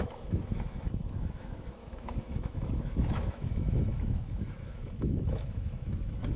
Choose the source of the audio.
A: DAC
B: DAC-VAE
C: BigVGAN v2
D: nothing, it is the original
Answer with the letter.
B